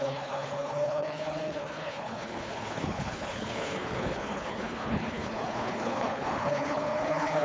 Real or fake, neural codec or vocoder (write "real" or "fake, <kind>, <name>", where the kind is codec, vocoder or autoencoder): fake, codec, HILCodec